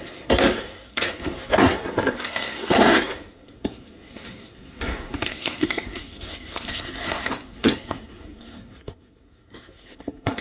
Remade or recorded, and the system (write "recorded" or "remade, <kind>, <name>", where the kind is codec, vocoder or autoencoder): remade, codec, SNAC